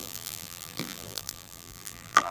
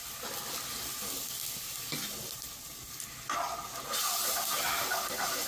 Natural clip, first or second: second